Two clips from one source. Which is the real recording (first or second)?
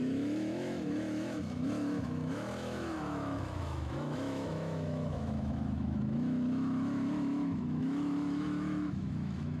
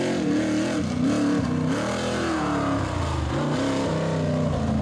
second